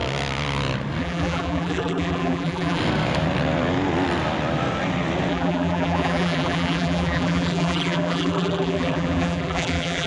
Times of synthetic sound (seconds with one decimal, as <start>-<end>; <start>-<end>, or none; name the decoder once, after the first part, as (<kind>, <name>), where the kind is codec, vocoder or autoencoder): 1.0-2.8 (vocoder, BigVGAN v2); 5.3-10.1